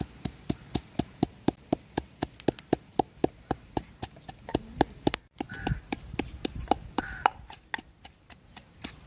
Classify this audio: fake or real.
fake